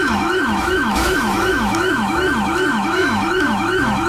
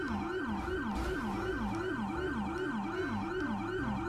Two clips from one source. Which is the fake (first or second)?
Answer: first